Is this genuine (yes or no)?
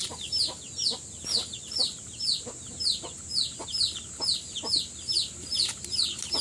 yes